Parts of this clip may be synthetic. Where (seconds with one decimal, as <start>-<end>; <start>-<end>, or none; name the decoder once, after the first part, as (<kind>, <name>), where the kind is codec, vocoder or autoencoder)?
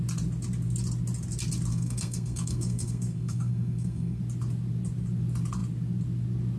1.7-4.2 (codec, SNAC)